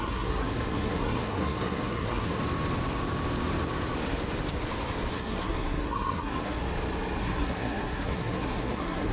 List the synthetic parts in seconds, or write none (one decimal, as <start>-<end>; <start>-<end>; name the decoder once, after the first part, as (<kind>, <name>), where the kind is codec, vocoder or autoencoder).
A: 0.0-2.4 (codec, SNAC); 5.1-6.6; 7.2-9.1